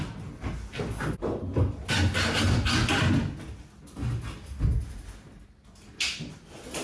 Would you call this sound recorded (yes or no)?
yes